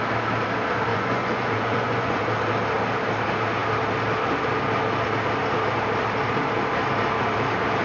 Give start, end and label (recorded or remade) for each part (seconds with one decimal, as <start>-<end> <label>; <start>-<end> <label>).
0.0-0.9 recorded; 0.9-2.2 remade; 2.2-7.8 recorded